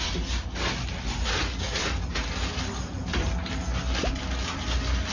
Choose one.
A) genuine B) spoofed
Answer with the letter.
A